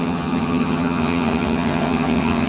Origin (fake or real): fake